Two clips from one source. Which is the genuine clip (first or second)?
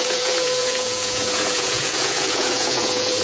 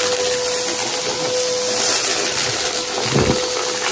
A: second